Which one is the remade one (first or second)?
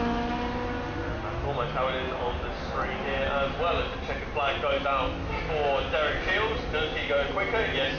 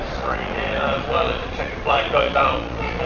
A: second